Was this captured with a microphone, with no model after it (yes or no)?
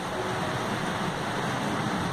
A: yes